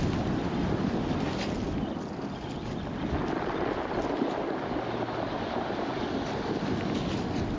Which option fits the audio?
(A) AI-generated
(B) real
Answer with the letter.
B